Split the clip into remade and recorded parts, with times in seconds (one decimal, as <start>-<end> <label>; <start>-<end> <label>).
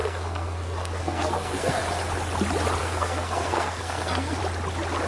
0.0-1.8 remade; 1.8-2.8 recorded; 2.8-4.4 remade; 4.4-5.1 recorded